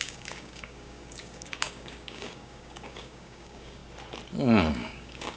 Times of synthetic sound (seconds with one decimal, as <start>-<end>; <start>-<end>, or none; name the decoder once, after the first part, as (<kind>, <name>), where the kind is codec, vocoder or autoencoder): 0.0-3.8 (codec, DAC); 4.7-5.4